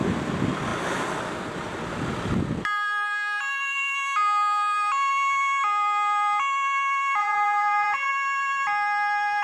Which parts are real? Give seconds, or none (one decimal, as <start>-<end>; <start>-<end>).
0.0-7.2; 8.1-9.4